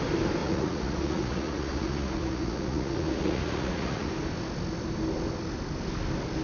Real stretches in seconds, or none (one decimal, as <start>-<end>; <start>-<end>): 0.0-0.4; 4.1-6.4